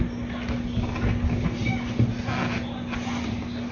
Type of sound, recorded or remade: recorded